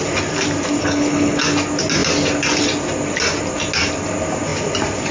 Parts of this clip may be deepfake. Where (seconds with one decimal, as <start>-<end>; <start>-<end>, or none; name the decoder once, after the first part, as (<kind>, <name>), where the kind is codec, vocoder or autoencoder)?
0.8-1.4 (codec, HILCodec)